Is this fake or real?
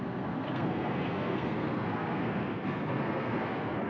fake